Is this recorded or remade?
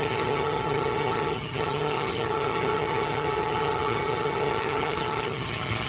remade